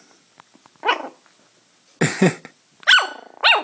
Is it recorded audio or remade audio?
recorded